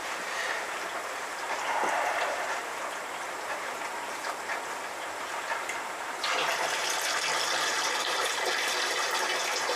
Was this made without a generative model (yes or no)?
no